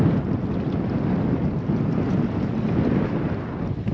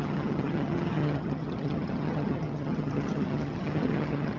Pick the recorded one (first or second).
first